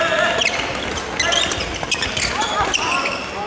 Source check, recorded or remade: recorded